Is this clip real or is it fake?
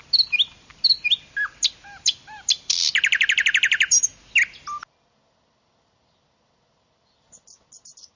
real